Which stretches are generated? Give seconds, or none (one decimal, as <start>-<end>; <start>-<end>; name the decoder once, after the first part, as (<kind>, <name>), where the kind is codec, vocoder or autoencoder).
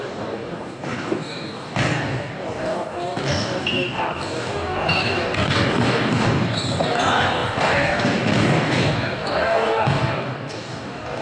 0.0-11.2 (codec, DAC)